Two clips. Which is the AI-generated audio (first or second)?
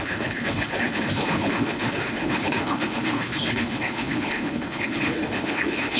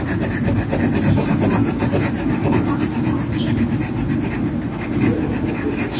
first